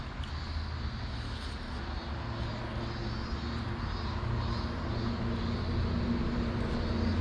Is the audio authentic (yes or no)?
yes